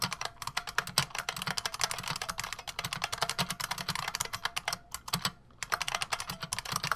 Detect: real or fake real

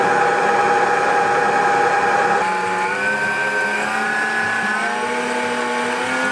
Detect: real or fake real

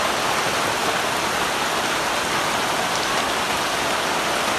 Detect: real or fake real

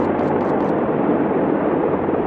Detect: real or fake real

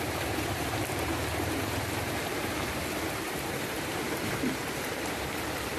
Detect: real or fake fake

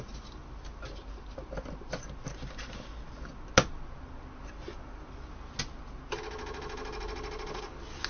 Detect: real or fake real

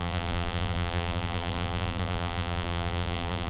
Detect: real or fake fake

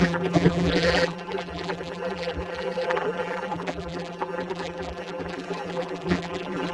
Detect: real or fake fake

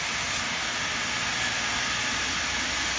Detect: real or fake real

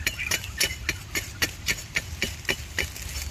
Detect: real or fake real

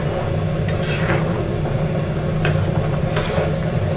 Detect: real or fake real